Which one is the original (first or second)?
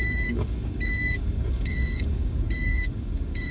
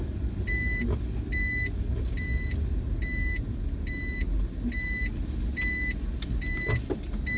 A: second